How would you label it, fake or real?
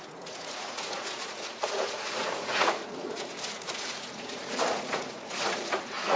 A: fake